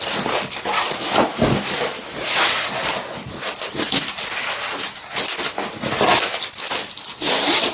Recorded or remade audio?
recorded